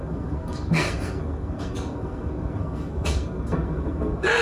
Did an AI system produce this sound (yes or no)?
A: yes